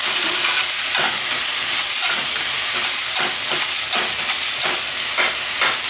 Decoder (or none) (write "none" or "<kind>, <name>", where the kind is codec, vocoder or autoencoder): none